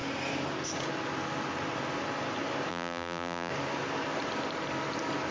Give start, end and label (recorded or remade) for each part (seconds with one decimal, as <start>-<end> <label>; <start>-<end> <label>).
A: 0.0-2.7 recorded; 2.7-3.5 remade; 3.5-5.3 recorded